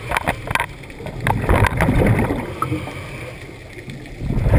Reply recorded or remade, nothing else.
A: recorded